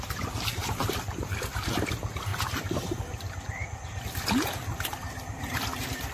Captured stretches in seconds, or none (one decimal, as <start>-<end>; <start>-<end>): 0.0-6.1